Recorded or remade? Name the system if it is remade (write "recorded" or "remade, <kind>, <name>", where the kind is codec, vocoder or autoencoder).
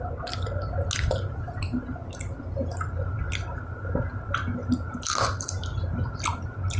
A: recorded